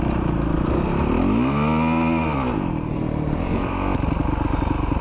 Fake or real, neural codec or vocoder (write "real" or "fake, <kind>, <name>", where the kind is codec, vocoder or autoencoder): real